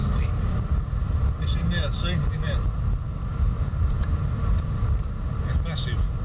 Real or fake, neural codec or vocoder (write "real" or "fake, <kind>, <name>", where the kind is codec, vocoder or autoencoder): real